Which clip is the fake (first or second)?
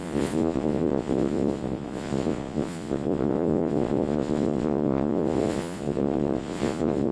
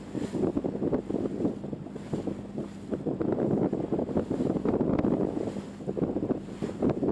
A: first